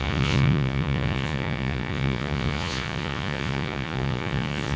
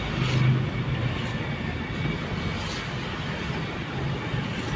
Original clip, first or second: second